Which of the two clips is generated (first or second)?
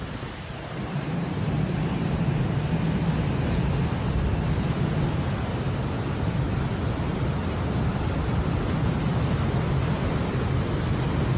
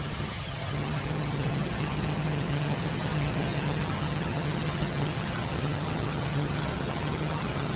second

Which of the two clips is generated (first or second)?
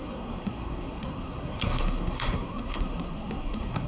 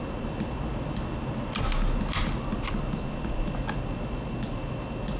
first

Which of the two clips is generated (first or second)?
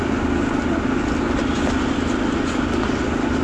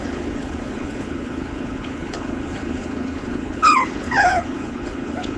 second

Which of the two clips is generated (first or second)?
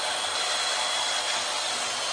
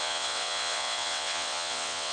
second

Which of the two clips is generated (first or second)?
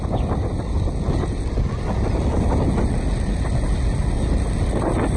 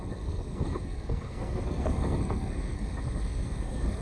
second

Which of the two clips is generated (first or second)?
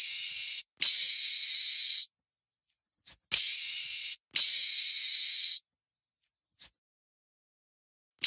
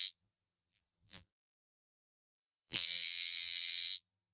second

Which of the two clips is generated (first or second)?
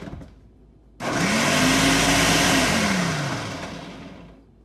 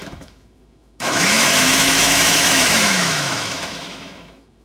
second